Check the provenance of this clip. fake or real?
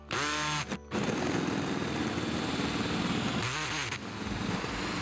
real